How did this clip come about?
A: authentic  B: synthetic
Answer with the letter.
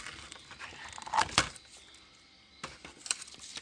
A